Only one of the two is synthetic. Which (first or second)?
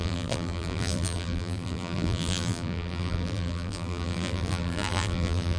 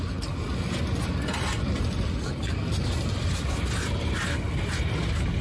first